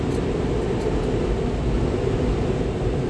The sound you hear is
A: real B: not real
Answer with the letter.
A